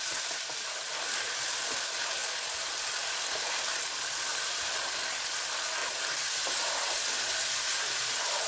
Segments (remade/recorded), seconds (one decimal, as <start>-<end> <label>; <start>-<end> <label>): 0.0-4.3 recorded; 4.3-4.9 remade; 4.9-8.5 recorded